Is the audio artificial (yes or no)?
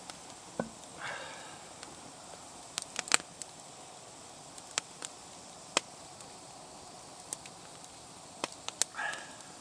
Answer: no